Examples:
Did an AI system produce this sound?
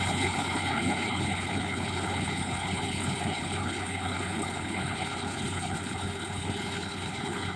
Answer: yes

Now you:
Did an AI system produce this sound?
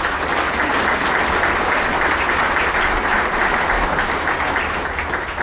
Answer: no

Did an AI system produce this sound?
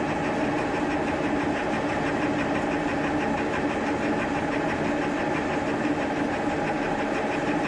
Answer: no